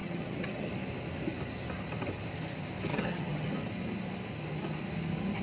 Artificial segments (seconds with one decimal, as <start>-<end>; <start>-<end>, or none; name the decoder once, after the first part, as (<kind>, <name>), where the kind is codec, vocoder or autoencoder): 0.0-0.7 (vocoder, HiFi-GAN); 2.9-3.5